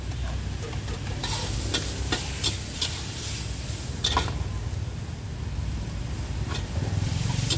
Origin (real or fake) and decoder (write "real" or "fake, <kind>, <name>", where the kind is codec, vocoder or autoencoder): real